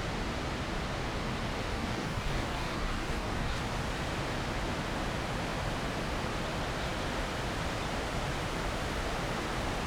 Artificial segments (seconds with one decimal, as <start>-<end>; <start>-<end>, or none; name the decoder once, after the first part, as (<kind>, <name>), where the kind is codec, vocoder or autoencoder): 1.7-3.6 (codec, DAC)